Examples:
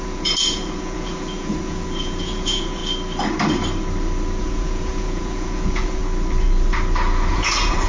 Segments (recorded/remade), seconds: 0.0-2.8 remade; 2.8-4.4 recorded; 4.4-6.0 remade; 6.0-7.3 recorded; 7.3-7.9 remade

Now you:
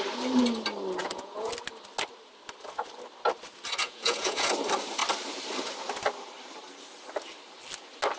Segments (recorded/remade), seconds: 0.0-1.0 recorded; 1.0-1.5 remade; 1.5-3.8 recorded; 3.8-4.5 remade; 4.5-8.2 recorded